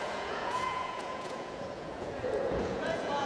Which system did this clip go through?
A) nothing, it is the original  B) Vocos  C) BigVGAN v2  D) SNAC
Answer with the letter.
B